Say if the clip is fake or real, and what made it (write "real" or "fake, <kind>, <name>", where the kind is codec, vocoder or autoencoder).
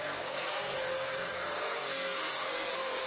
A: fake, codec, SNAC